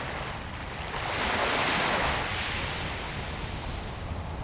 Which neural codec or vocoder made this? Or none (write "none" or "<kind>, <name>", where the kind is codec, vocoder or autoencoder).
none